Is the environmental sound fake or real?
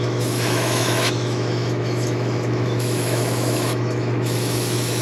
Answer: fake